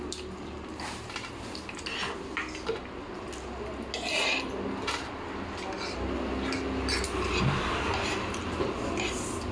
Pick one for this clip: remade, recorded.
recorded